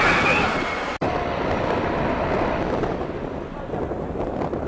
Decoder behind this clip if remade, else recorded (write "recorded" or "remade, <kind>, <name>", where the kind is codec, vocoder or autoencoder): recorded